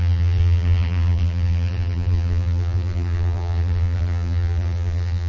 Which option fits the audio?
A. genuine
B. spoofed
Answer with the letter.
B